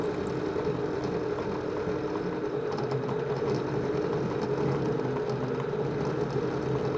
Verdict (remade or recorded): recorded